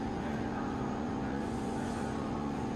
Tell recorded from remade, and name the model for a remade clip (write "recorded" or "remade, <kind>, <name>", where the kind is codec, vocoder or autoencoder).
remade, vocoder, Vocos